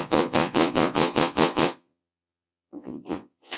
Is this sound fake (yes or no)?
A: yes